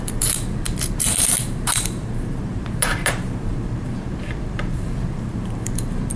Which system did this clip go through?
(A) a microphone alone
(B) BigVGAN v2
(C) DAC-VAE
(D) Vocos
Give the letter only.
B